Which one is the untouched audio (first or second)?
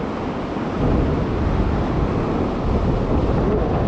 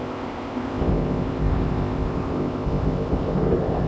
first